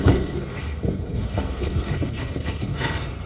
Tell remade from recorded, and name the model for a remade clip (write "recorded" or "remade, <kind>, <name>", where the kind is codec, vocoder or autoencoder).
remade, codec, SNAC